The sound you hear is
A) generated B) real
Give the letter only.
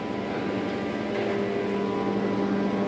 B